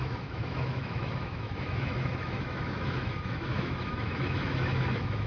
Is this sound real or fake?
fake